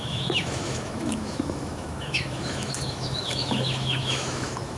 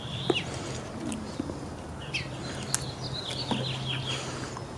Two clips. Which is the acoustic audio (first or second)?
second